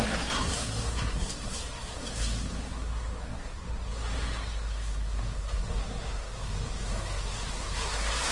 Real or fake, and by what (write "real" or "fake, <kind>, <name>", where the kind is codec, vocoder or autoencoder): fake, codec, SNAC